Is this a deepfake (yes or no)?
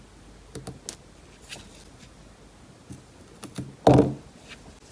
no